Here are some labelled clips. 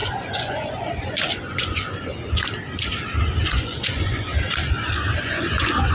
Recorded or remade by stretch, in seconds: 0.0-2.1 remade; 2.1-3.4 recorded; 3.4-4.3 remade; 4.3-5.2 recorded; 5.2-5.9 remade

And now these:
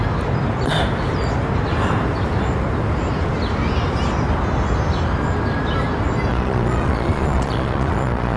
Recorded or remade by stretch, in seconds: 0.0-6.3 recorded; 6.3-8.4 remade

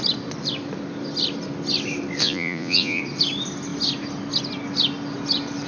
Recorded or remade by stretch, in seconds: 0.0-2.2 recorded; 2.2-3.0 remade; 3.0-5.7 recorded

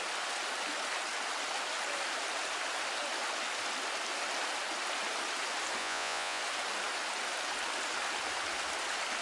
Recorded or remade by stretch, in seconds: 0.0-5.8 recorded; 5.8-6.4 remade; 6.4-9.2 recorded

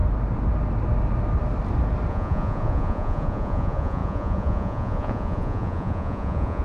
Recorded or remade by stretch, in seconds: 0.0-2.1 recorded; 2.1-6.6 remade

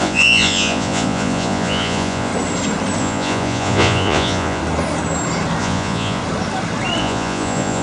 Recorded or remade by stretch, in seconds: 0.0-2.3 remade; 2.3-3.0 recorded; 3.0-4.6 remade; 4.6-5.6 recorded; 5.6-6.2 remade; 6.2-7.0 recorded; 7.0-7.8 remade

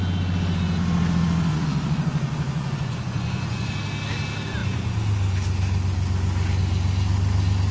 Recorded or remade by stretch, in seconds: 0.0-1.5 recorded; 1.5-3.7 remade; 3.7-7.7 recorded

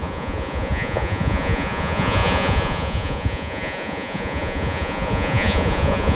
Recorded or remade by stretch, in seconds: 0.0-6.1 remade